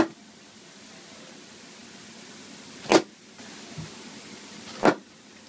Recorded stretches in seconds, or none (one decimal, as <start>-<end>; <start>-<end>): 0.0-5.5